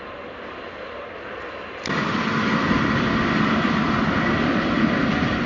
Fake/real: real